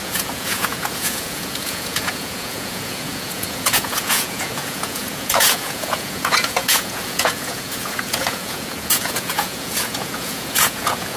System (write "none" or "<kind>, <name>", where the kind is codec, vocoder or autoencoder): vocoder, Vocos